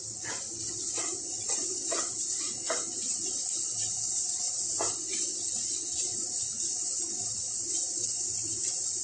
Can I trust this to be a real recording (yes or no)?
yes